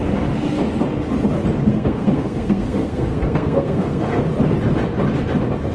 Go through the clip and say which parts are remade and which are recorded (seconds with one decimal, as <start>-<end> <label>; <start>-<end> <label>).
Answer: 0.0-1.7 recorded; 1.7-4.2 remade; 4.2-5.7 recorded